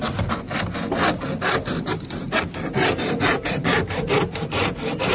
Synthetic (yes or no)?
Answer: no